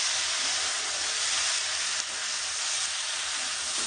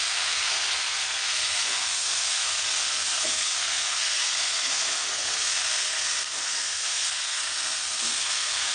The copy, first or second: second